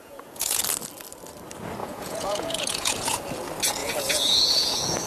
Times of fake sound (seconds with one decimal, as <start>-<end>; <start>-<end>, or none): 0.0-0.6; 1.8-3.2; 3.8-5.1